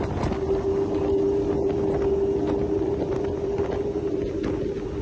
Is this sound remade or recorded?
recorded